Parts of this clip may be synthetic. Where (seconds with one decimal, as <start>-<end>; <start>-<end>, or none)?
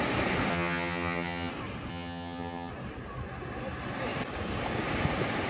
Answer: 0.5-1.5; 1.9-2.7